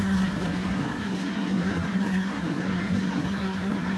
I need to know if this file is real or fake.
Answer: fake